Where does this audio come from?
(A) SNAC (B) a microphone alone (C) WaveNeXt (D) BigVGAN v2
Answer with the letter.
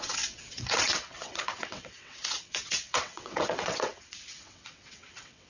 C